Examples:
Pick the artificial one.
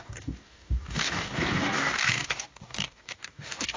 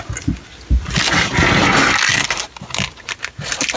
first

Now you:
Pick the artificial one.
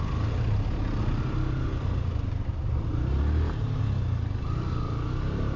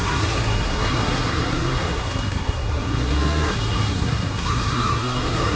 second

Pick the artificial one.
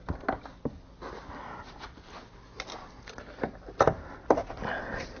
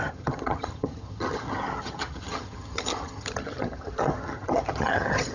second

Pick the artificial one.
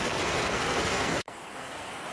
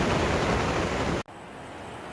first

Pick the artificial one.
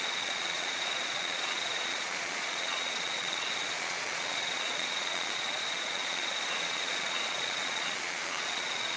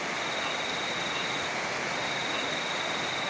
first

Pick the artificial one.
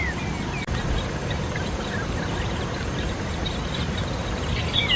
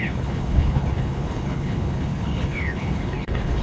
second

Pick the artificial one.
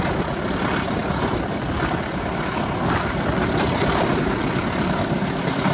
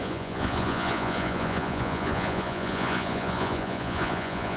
second